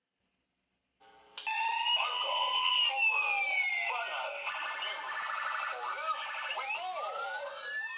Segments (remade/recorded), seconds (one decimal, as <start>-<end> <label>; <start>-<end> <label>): 0.0-2.0 recorded; 2.0-2.7 remade; 2.7-8.0 recorded